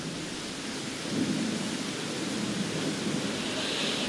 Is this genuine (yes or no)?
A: yes